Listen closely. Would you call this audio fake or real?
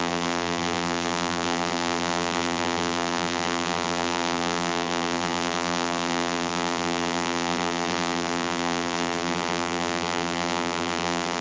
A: fake